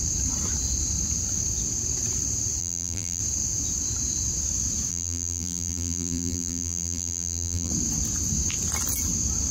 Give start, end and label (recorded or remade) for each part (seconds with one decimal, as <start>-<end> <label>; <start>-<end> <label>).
0.0-2.6 recorded; 2.6-3.2 remade; 3.2-4.9 recorded; 4.9-7.7 remade; 7.7-9.5 recorded